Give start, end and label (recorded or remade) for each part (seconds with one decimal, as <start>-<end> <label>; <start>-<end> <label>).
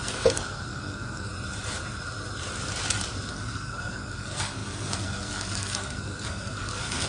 0.0-1.3 remade; 1.3-3.3 recorded; 3.3-7.1 remade